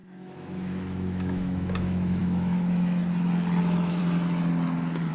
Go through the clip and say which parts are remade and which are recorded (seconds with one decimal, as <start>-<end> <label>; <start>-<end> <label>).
0.0-3.0 remade; 3.0-3.6 recorded; 3.6-4.0 remade; 4.0-5.1 recorded